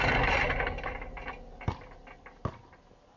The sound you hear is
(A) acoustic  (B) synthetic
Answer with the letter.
A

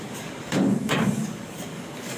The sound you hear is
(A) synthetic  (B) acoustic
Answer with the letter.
A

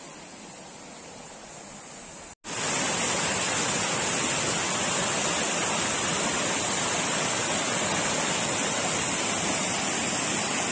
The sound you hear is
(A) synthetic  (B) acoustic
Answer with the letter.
B